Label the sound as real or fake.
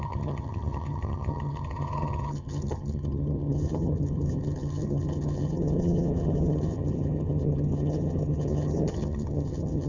fake